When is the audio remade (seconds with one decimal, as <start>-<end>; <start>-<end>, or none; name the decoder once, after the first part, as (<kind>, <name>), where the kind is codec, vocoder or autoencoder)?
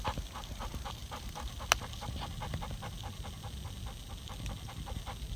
none